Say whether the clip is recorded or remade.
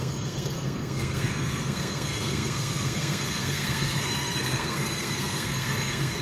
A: remade